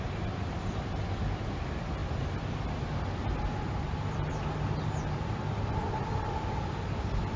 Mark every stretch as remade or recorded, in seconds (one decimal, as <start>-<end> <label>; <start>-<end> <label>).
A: 0.0-7.4 recorded